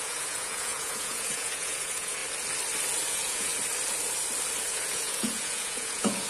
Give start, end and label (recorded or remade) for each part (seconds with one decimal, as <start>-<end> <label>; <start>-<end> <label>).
0.0-2.2 remade; 2.2-3.1 recorded; 3.1-3.5 remade; 3.5-4.7 recorded; 4.7-6.3 remade